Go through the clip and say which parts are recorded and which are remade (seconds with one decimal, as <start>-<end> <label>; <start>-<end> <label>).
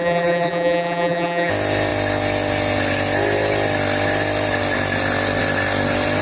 0.0-1.5 remade; 1.5-6.2 recorded